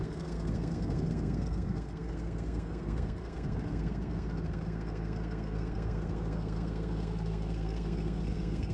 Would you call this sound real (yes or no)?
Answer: no